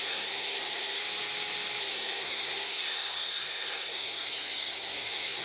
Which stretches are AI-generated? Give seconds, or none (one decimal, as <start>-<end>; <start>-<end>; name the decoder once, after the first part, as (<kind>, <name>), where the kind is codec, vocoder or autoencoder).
0.0-1.0 (codec, SNAC); 1.8-5.4